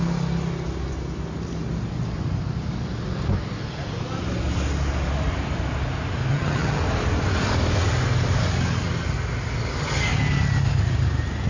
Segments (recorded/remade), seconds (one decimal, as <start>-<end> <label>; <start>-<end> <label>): 0.0-6.3 recorded; 6.3-6.8 remade; 6.8-11.5 recorded